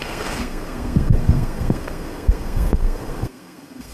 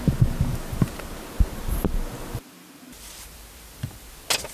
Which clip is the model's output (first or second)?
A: first